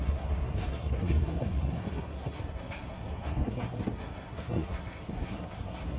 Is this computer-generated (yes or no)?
yes